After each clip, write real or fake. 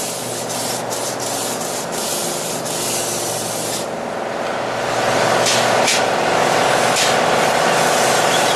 real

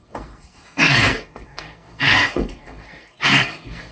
fake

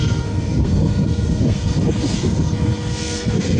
fake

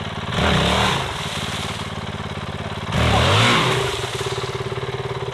real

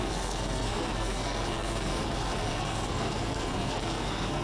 fake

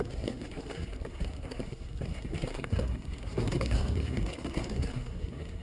fake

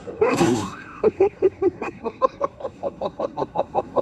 fake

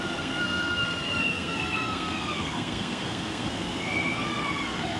fake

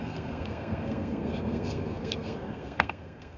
fake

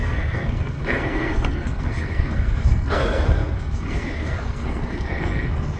fake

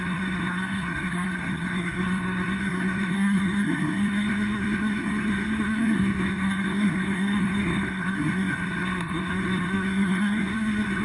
fake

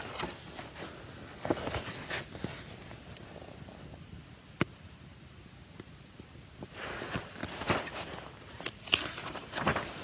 real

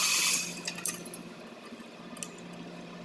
real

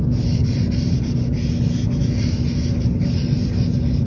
real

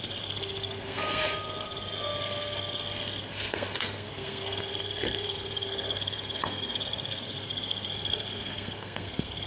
fake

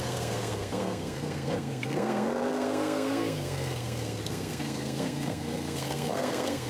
fake